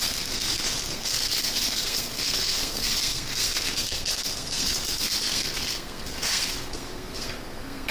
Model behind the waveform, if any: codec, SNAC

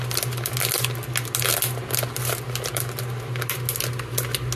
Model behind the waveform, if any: none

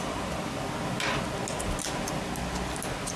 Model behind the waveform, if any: none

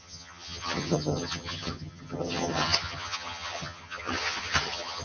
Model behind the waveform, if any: vocoder, HiFi-GAN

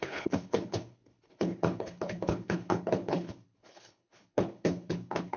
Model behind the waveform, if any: codec, HILCodec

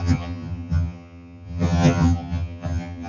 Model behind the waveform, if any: vocoder, HiFi-GAN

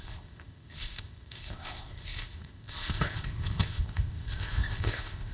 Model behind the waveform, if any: codec, ZipCodec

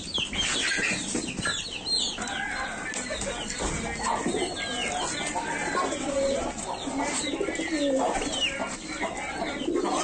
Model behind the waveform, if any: none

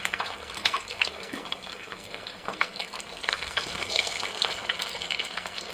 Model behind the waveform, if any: codec, SNAC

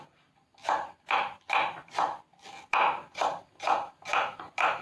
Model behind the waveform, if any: none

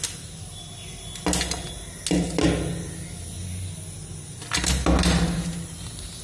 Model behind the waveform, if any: none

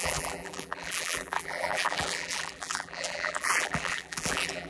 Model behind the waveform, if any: vocoder, BigVGAN v2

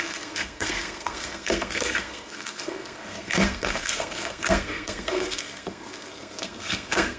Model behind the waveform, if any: codec, SNAC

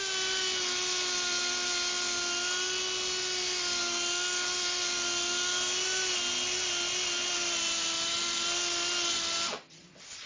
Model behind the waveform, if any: none